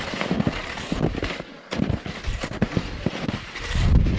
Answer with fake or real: real